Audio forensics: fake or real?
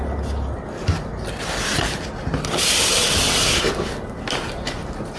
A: real